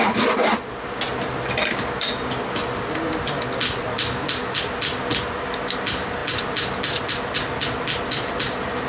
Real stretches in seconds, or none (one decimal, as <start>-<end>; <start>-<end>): 0.0-8.9